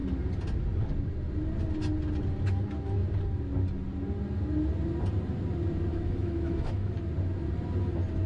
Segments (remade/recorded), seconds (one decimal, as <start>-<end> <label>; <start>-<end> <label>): 0.0-5.9 recorded; 5.9-7.1 remade; 7.1-8.3 recorded

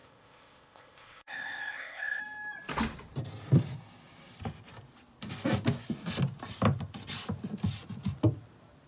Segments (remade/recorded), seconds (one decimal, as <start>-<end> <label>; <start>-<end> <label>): 0.0-2.2 remade; 2.2-8.9 recorded

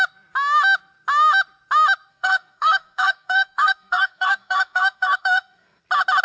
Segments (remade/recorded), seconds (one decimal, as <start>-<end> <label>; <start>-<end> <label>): 0.0-2.1 recorded; 2.1-5.8 remade; 5.8-6.2 recorded

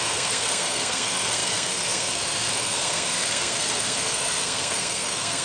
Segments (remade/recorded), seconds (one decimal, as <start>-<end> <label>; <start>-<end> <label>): 0.0-5.4 remade

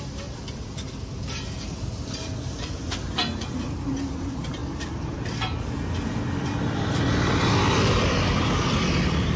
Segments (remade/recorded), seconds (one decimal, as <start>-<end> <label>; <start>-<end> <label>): 0.0-9.4 remade

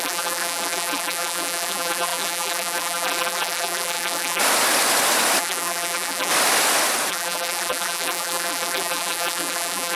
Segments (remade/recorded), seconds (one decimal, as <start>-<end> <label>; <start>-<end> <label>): 0.0-4.4 remade; 4.4-5.4 recorded; 5.4-6.3 remade; 6.3-7.1 recorded; 7.1-10.0 remade